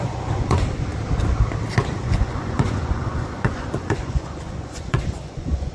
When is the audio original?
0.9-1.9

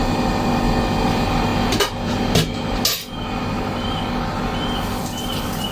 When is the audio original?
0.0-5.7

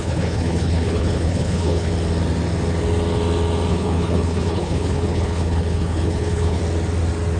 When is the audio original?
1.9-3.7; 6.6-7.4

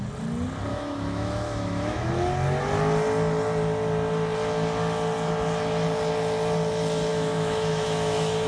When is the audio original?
0.0-0.7; 2.1-7.1